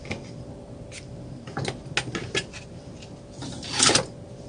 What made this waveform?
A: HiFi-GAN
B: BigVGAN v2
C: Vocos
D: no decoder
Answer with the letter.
D